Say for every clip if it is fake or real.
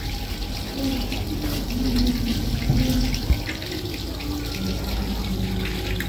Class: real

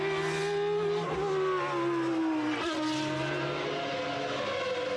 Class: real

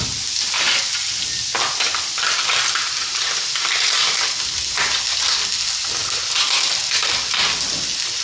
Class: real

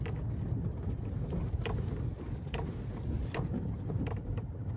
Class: fake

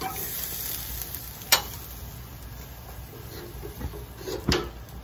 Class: real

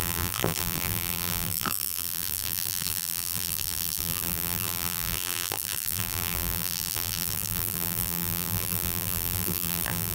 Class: fake